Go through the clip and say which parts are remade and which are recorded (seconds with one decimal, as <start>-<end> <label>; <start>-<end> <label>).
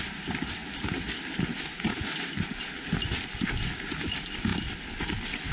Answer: 0.0-0.6 remade; 0.6-3.9 recorded; 3.9-5.5 remade